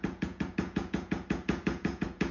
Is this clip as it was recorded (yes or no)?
no